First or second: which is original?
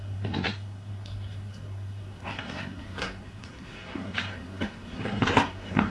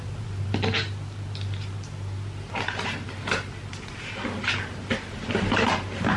second